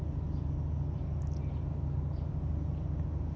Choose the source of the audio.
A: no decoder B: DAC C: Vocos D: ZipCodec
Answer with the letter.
A